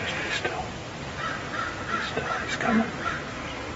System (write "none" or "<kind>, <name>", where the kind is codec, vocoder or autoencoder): none